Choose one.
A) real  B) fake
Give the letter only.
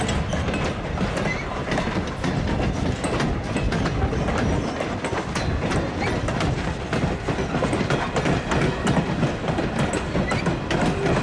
A